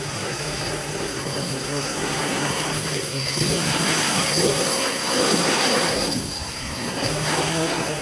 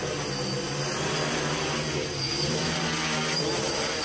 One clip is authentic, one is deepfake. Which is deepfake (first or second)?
first